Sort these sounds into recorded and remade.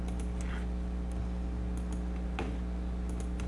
recorded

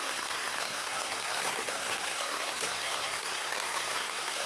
remade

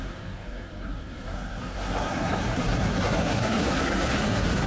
remade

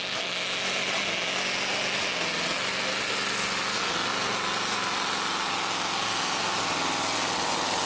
recorded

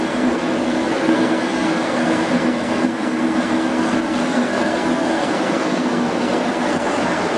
remade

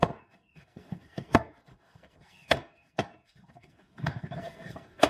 remade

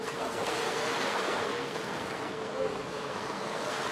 remade